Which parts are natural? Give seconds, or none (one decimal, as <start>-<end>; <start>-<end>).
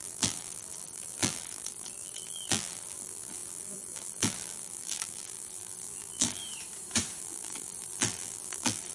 6.4-7.2